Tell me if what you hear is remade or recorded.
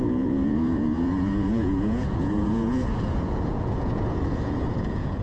remade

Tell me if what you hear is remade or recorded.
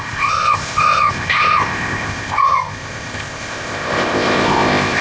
remade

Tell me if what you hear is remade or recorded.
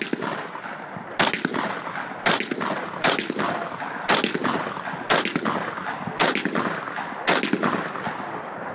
recorded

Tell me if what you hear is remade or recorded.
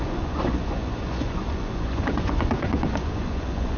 remade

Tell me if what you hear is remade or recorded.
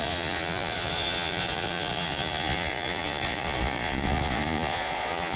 remade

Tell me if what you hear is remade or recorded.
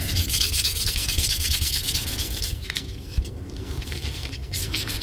remade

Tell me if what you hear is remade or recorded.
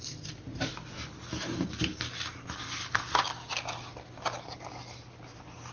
recorded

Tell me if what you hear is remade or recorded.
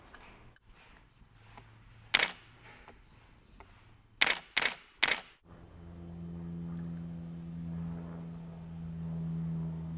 recorded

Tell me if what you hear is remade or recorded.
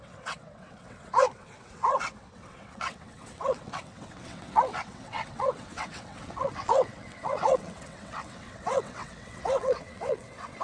remade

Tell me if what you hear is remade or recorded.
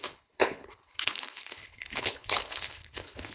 remade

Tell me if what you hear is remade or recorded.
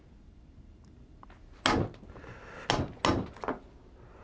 recorded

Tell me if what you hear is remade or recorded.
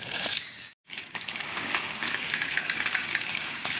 remade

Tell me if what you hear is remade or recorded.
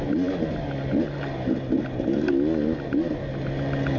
recorded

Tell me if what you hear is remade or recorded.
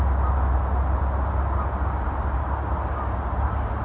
recorded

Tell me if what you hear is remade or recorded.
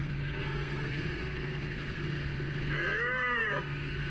remade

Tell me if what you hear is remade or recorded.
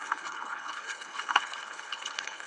remade